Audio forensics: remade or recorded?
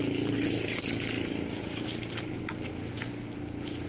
recorded